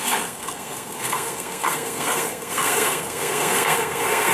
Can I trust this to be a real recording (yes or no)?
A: no